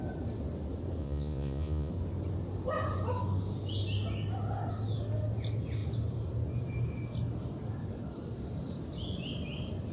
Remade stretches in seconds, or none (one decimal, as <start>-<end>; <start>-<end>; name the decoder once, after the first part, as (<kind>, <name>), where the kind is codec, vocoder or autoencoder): 1.0-1.9 (vocoder, Vocos)